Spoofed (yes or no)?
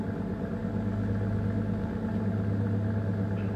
no